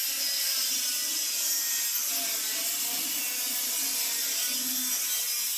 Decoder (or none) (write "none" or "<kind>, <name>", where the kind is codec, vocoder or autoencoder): none